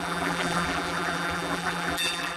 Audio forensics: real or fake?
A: fake